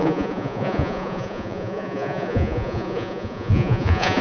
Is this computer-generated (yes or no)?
yes